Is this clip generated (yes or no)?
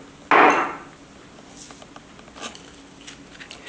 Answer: no